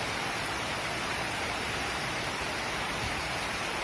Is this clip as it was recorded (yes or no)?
no